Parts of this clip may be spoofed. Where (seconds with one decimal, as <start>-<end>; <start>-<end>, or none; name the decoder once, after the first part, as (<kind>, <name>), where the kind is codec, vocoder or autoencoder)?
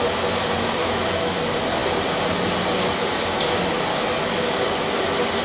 0.8-1.4 (autoencoder, DAC-VAE)